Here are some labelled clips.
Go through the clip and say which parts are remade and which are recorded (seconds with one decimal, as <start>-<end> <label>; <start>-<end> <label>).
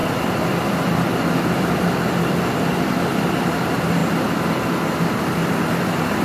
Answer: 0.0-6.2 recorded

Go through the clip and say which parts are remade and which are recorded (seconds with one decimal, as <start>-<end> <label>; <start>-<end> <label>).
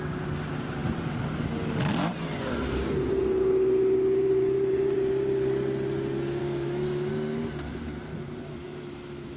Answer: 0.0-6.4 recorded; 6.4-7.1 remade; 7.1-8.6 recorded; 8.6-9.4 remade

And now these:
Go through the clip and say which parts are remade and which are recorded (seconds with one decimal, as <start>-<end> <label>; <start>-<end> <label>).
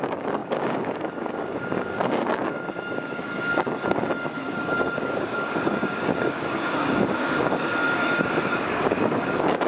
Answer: 0.0-9.7 remade